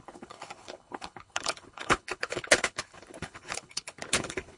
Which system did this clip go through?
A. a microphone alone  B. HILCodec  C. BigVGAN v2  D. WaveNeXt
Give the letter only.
B